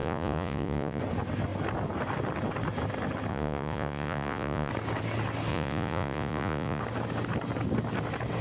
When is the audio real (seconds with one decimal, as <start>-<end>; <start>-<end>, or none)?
1.0-3.3; 4.7-5.5; 6.8-8.4